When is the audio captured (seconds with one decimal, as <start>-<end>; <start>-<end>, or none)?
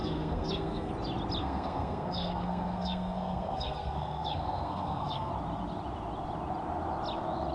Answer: 0.9-1.4; 5.3-7.5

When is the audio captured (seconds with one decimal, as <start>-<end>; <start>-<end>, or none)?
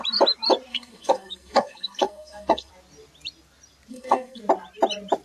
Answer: 0.0-0.7; 2.7-3.9; 4.4-5.2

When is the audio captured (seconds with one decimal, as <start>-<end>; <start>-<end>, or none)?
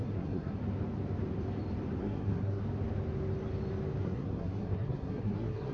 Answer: 0.6-2.0; 2.6-4.0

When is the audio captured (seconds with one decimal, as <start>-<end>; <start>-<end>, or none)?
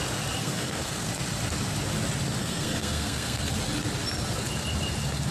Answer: 0.0-0.4; 1.1-2.4; 3.5-5.3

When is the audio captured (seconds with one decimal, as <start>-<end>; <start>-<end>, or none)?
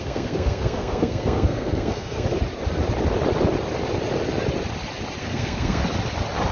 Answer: 2.3-5.2; 5.8-6.5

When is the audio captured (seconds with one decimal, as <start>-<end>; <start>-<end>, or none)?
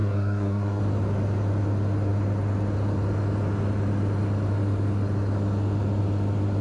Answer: 0.8-6.6